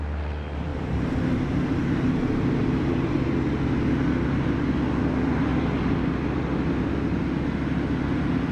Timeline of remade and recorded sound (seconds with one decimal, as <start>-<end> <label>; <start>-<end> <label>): 0.0-0.7 recorded; 0.7-3.2 remade; 3.2-8.5 recorded